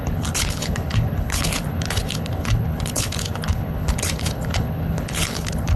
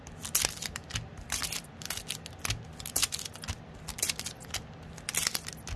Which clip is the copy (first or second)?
first